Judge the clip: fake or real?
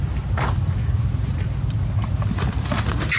real